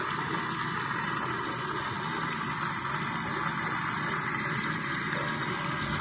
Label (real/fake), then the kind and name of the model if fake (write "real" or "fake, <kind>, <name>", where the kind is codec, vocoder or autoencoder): real